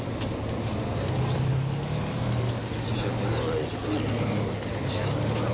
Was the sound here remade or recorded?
recorded